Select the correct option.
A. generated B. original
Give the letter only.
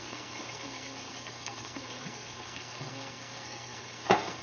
A